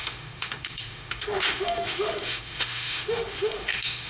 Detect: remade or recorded remade